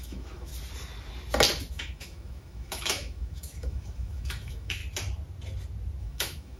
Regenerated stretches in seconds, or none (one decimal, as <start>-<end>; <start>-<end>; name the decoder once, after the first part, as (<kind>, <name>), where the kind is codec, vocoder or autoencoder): 0.0-0.5 (autoencoder, DAC-VAE); 1.7-4.8; 6.0-6.6

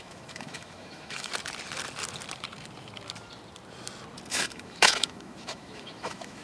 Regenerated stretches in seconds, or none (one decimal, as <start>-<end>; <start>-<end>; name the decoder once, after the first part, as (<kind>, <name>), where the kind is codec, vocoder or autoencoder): 0.0-1.3 (autoencoder, DAC-VAE); 4.3-6.4

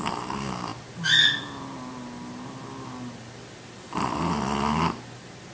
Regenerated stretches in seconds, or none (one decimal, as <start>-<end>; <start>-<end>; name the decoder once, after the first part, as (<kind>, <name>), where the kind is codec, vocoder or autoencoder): none

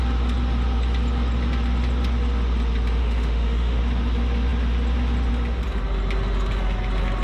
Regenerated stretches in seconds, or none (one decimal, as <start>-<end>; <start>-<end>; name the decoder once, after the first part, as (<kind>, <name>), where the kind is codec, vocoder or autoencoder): 3.0-3.8 (autoencoder, DAC-VAE)

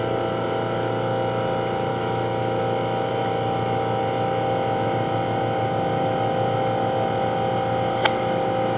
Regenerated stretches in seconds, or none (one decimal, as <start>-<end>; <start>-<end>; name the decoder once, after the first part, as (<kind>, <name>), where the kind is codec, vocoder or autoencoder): 1.9-2.6 (autoencoder, DAC-VAE)

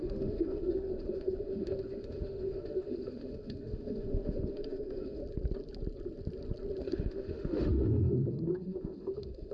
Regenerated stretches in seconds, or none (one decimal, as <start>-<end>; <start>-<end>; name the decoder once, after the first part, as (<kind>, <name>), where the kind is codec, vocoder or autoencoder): 0.0-5.2 (autoencoder, DAC-VAE); 6.8-9.5

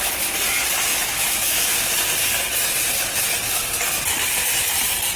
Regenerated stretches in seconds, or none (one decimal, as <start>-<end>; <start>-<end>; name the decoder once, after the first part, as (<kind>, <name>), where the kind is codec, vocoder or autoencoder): 0.9-1.9 (autoencoder, DAC-VAE)